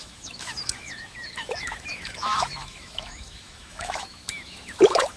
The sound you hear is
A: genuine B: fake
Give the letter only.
B